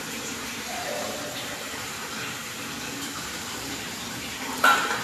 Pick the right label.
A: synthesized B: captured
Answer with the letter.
A